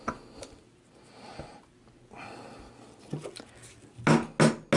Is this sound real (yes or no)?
yes